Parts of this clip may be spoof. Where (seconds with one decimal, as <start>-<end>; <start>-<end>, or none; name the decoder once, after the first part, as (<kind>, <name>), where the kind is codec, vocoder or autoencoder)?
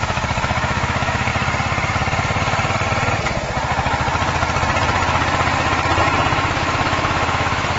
0.0-1.3 (autoencoder, DAC-VAE); 6.0-7.8